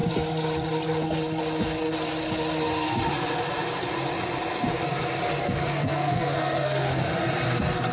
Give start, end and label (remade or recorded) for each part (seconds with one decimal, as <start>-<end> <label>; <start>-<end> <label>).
0.0-5.4 recorded; 5.4-7.1 remade; 7.1-7.9 recorded